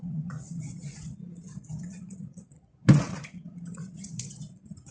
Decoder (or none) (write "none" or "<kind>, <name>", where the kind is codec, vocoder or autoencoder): vocoder, Vocos